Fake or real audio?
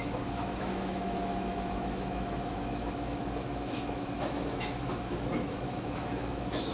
fake